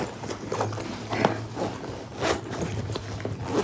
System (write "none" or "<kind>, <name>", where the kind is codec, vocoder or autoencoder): none